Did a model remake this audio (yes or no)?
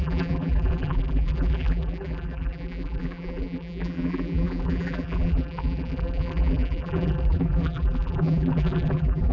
yes